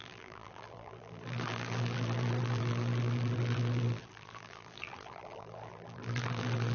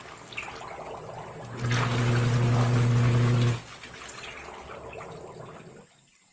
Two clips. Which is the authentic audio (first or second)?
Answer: second